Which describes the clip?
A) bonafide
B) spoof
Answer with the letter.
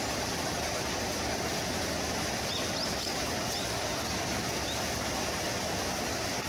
A